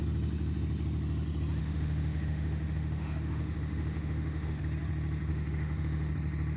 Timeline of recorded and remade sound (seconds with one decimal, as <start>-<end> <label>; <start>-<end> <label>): 0.0-1.6 recorded; 1.6-4.6 remade; 4.6-5.3 recorded; 5.3-6.1 remade; 6.1-6.6 recorded